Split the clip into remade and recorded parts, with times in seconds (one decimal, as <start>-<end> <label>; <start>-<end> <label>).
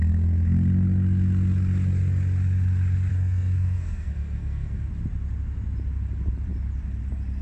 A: 0.0-3.1 recorded; 3.1-4.9 remade; 4.9-7.4 recorded